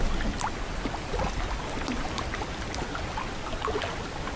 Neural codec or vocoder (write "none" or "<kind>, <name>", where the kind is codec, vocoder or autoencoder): none